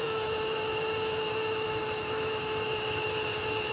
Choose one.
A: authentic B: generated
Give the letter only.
B